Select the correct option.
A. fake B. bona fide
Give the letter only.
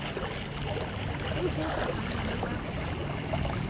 B